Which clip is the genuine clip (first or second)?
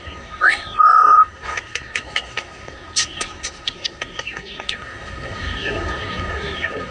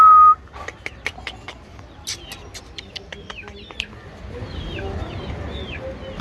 second